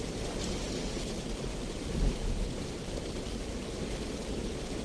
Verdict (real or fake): real